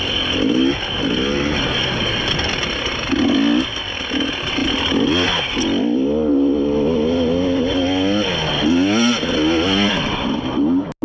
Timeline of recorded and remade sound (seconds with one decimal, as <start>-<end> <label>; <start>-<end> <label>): 0.0-11.0 recorded